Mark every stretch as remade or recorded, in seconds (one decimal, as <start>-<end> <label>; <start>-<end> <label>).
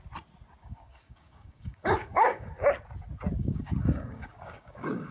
0.0-0.6 recorded; 0.6-2.5 remade; 2.5-3.4 recorded; 3.4-5.1 remade